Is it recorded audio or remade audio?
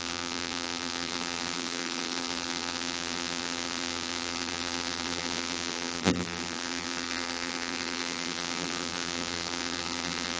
remade